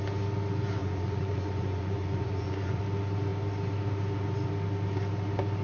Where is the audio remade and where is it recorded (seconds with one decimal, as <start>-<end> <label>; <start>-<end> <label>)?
0.0-0.8 recorded; 0.8-2.8 remade; 2.8-5.6 recorded